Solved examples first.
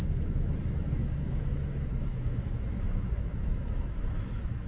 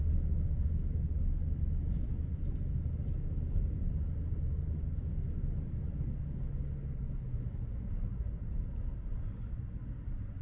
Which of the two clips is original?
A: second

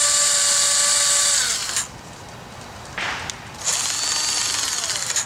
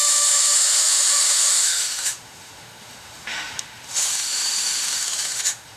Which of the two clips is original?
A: first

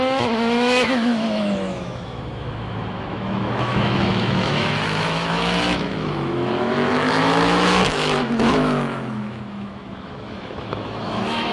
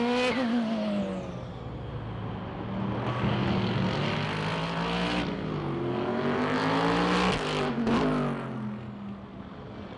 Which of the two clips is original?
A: second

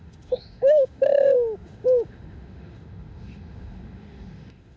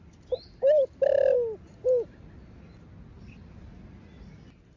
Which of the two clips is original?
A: second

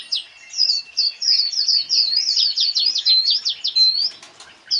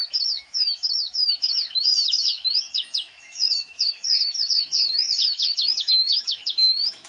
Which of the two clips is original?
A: first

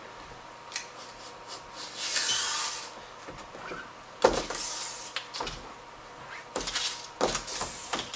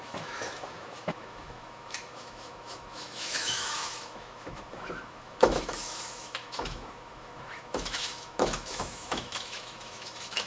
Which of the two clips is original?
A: first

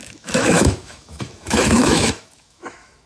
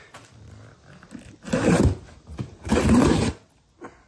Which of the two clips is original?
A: second